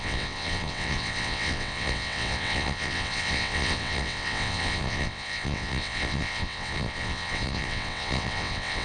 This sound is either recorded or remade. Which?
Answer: remade